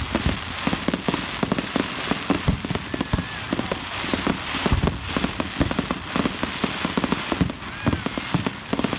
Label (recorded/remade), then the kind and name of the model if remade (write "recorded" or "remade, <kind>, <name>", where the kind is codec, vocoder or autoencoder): recorded